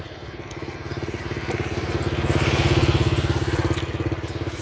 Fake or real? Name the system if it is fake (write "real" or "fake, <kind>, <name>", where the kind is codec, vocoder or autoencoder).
real